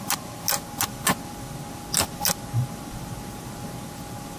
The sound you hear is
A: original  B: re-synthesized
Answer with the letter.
A